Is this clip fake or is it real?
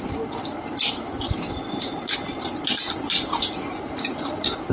fake